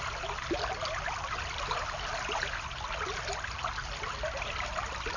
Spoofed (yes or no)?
no